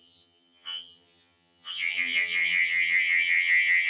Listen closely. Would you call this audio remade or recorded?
remade